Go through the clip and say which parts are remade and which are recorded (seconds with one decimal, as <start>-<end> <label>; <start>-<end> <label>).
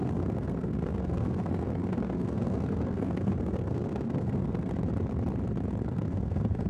0.0-4.7 remade; 4.7-5.8 recorded; 5.8-6.7 remade